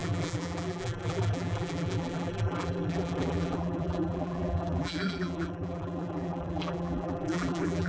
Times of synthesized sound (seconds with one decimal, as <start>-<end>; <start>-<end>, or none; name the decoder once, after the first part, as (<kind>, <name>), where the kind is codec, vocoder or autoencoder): 0.0-7.9 (vocoder, BigVGAN v2)